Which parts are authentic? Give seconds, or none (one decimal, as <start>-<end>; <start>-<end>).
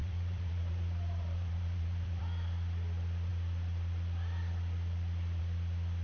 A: 2.2-6.0